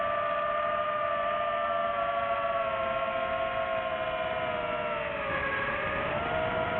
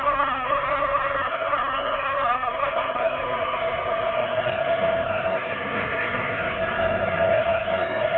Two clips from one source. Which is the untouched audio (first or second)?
first